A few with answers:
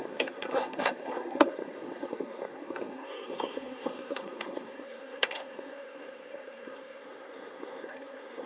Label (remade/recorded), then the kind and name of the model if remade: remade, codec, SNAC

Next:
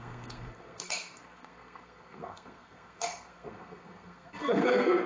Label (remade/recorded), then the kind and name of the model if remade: remade, codec, SNAC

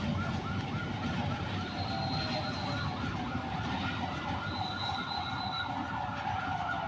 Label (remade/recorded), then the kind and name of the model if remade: recorded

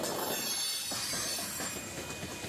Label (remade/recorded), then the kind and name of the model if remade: recorded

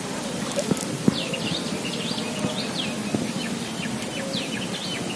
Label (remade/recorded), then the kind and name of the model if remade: recorded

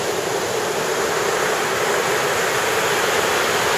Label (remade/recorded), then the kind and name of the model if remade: remade, vocoder, BigVGAN v2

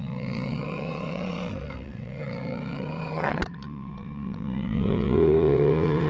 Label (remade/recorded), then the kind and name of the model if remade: remade, vocoder, WaveNeXt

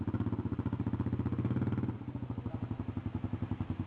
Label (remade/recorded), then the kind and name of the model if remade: recorded